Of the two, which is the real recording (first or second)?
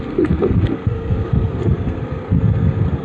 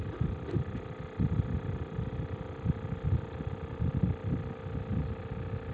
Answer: second